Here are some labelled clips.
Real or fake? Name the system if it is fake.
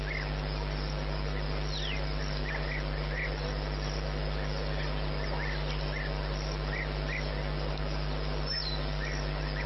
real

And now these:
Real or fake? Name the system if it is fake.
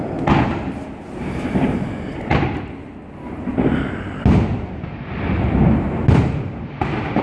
real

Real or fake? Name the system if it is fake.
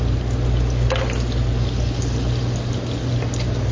real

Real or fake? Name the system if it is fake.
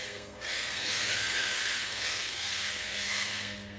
fake, codec, SNAC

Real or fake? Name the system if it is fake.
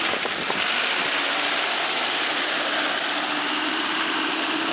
real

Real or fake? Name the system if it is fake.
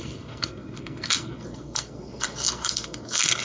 fake, codec, SNAC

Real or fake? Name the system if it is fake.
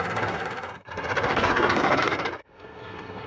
fake, codec, SNAC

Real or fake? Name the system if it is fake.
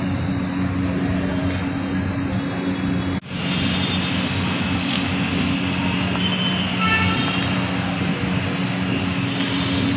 real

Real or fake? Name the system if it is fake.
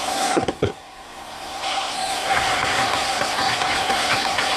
fake, codec, SNAC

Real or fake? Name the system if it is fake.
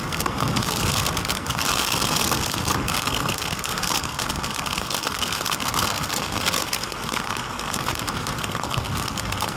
fake, codec, SNAC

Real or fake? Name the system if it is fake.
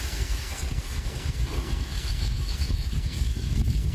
fake, codec, SNAC